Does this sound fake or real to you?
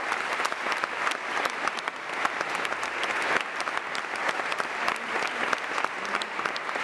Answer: real